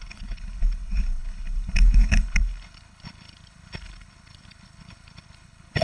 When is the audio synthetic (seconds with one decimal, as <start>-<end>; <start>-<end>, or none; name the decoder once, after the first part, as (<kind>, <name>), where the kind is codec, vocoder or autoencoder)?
0.0-5.8 (codec, HILCodec)